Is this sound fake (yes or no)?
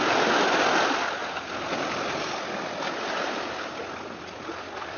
no